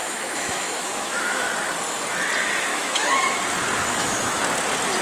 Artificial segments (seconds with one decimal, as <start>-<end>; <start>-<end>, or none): 0.0-1.4; 2.7-3.3; 3.9-4.4